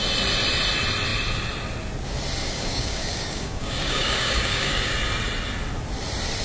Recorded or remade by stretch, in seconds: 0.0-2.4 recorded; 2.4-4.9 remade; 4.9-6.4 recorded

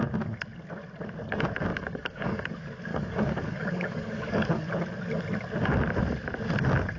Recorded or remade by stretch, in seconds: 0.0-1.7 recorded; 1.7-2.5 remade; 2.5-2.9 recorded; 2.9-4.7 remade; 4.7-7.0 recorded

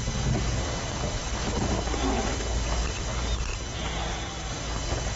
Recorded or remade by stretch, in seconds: 0.0-5.2 recorded

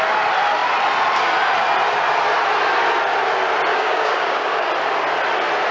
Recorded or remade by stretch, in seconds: 0.0-3.7 recorded; 3.7-4.7 remade; 4.7-5.7 recorded

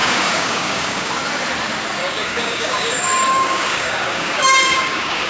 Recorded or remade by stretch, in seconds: 0.0-1.1 remade; 1.1-2.0 recorded; 2.0-5.3 remade

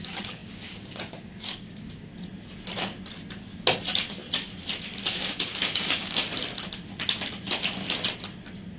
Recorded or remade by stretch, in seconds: 0.0-2.1 remade; 2.1-5.1 recorded; 5.1-6.3 remade; 6.3-8.8 recorded

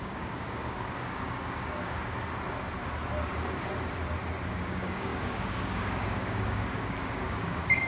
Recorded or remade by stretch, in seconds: 0.0-2.0 remade; 2.0-4.5 recorded; 4.5-7.9 remade

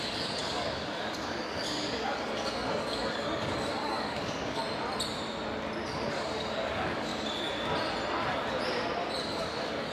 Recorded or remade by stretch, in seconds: 0.0-4.6 remade; 4.6-6.1 recorded; 6.1-7.1 remade; 7.1-9.2 recorded; 9.2-9.9 remade